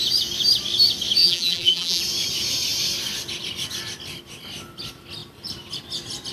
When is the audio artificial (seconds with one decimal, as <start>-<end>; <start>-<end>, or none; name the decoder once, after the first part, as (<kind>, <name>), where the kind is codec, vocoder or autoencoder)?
1.2-2.0 (vocoder, BigVGAN v2)